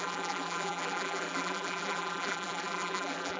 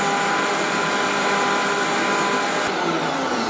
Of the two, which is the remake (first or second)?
first